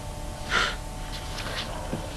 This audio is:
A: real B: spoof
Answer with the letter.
A